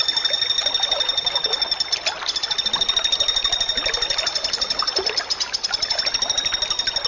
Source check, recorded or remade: recorded